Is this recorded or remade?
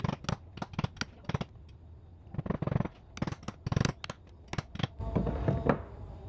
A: recorded